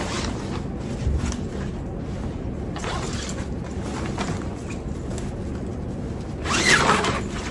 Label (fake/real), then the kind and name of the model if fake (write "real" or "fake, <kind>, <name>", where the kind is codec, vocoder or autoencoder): real